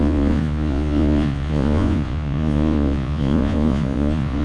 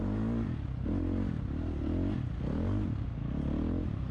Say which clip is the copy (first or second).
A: first